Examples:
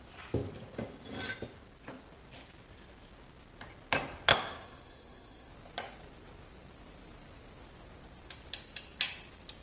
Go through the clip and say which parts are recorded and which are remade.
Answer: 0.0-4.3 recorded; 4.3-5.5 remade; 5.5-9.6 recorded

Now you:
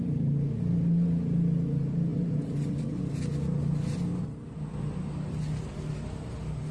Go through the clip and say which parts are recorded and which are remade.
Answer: 0.0-2.1 recorded; 2.1-3.0 remade; 3.0-6.7 recorded

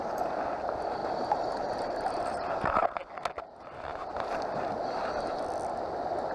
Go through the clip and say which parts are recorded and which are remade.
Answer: 0.0-1.0 recorded; 1.0-2.9 remade; 2.9-6.3 recorded

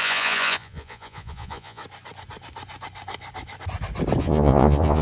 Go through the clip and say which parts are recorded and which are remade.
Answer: 0.0-1.8 remade; 1.8-4.2 recorded; 4.2-5.0 remade

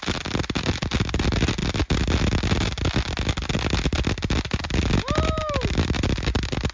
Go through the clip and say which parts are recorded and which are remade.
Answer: 0.0-6.7 recorded

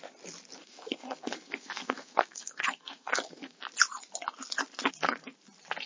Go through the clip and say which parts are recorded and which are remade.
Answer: 0.0-0.6 recorded; 0.6-3.6 remade; 3.6-5.9 recorded